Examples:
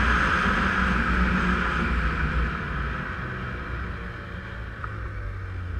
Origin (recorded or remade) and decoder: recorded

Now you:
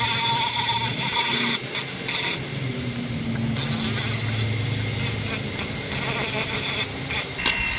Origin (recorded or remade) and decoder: recorded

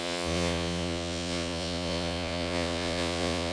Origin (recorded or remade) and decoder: remade, vocoder, Vocos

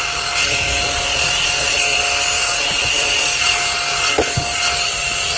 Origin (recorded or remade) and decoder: recorded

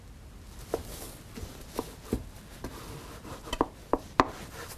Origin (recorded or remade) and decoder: recorded